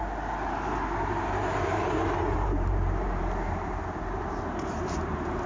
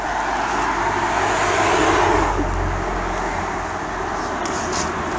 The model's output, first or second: first